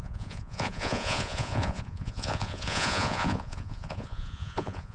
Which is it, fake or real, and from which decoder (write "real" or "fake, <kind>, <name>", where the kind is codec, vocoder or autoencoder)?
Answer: fake, vocoder, Vocos